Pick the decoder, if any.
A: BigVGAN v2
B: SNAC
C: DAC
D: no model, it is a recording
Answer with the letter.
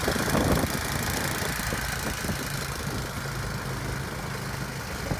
D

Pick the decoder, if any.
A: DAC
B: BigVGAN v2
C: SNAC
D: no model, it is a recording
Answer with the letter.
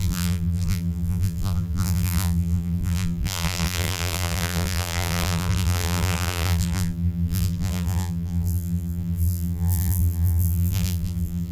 B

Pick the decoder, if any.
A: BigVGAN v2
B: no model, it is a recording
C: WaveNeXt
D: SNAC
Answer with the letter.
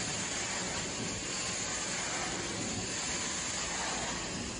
B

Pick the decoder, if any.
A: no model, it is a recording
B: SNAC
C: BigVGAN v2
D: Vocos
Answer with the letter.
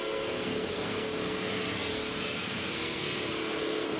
B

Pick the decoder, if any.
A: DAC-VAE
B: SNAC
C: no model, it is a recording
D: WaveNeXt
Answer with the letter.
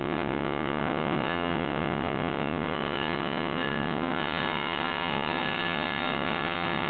D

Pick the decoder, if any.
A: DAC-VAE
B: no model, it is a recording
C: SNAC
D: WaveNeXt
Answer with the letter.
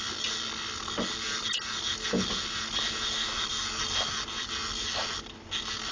B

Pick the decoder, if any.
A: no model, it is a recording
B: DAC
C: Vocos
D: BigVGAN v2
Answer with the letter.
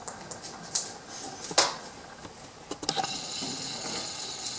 A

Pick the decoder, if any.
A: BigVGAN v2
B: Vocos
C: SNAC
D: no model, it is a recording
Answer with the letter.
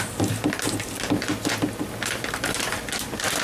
D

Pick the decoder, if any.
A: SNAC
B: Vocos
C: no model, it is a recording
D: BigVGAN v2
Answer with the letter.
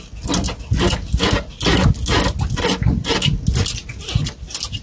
C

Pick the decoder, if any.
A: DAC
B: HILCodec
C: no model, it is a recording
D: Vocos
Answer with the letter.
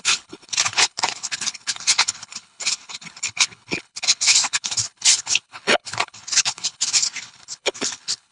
B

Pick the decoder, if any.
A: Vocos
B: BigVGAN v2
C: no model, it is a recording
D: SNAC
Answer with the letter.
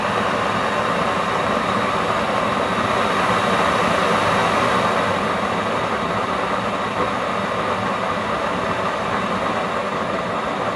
C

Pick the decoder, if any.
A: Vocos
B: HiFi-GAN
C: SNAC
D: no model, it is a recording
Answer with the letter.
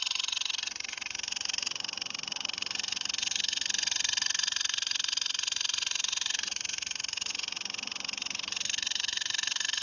B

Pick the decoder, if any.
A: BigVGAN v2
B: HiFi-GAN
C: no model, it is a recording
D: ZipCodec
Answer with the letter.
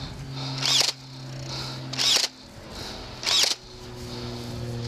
C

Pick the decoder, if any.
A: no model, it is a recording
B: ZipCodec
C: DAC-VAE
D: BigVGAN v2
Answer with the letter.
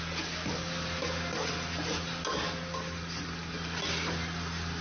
A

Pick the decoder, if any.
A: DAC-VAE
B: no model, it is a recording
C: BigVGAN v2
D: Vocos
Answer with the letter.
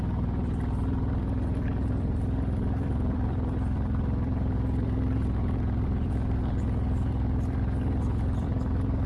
C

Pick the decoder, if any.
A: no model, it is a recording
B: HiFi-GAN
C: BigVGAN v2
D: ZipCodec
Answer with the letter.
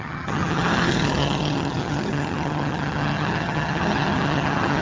B